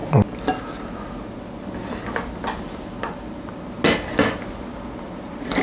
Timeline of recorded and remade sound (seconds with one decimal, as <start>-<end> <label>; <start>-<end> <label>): 0.0-5.6 recorded